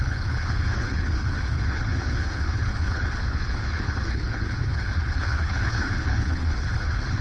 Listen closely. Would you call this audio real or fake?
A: fake